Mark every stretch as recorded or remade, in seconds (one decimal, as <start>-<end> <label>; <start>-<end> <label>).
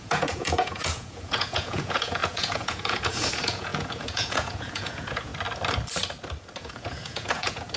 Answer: 0.0-5.3 remade; 5.3-6.6 recorded; 6.6-7.8 remade